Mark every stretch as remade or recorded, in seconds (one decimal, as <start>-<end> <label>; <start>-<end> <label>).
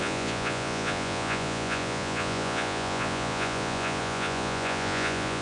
0.0-5.4 remade